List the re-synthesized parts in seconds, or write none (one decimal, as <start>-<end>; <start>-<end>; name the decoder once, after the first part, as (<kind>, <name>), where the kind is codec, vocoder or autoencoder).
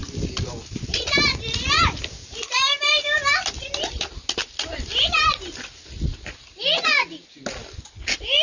none